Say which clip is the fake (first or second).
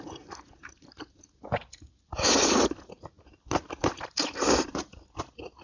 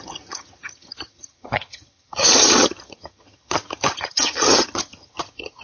second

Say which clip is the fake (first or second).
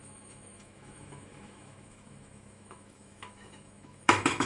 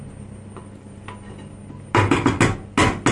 first